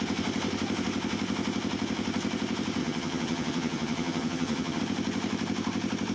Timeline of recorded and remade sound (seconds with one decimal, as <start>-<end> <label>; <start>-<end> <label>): 0.0-2.8 recorded; 2.8-4.8 remade; 4.8-6.1 recorded